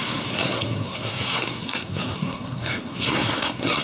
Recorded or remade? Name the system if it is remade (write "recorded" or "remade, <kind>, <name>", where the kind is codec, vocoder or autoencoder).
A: remade, codec, SNAC